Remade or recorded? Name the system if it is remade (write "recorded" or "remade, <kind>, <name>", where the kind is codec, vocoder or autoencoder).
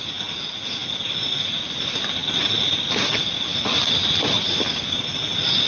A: recorded